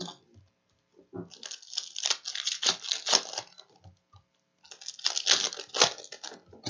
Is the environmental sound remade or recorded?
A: recorded